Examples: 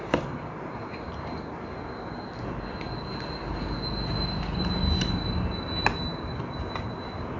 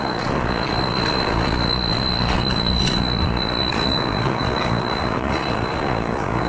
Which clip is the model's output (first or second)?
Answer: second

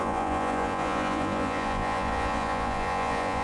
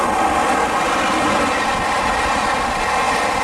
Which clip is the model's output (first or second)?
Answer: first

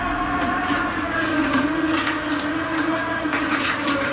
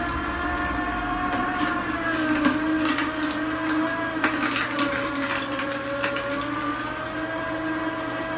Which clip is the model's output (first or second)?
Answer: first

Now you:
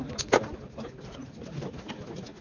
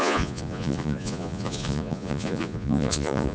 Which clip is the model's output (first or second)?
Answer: second